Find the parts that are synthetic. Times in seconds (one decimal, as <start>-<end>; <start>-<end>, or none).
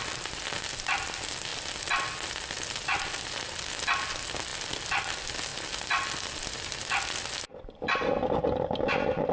4.5-5.1; 7.5-8.1